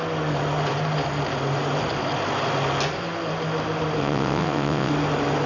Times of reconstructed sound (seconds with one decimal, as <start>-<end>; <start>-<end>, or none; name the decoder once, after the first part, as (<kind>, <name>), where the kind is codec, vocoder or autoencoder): 4.0-4.9 (vocoder, WaveNeXt)